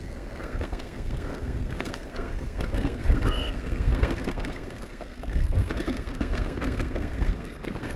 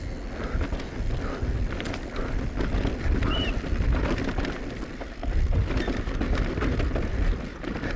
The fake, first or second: first